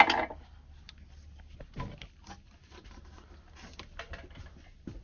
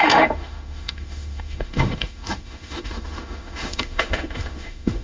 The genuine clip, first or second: first